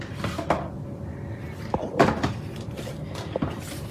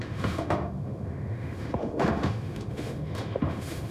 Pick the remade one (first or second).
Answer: second